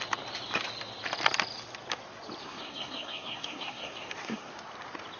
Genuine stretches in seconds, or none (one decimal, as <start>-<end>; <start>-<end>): 0.0-2.4; 4.5-5.2